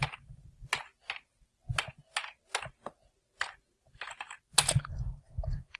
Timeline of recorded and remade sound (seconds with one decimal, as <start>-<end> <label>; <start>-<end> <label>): 0.0-5.8 recorded